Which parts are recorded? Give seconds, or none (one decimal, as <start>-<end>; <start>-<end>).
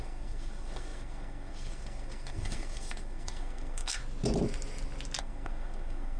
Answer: 4.0-5.2